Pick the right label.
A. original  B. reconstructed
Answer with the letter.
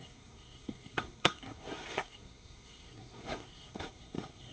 B